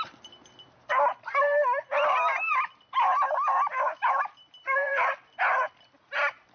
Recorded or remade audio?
remade